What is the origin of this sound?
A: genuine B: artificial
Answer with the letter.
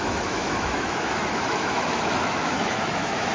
B